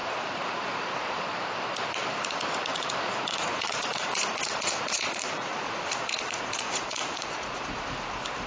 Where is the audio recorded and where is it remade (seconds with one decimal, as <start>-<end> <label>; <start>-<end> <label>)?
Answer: 0.0-1.2 remade; 1.2-2.7 recorded; 2.7-7.8 remade; 7.8-8.5 recorded